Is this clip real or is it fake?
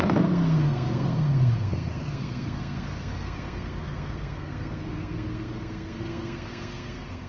fake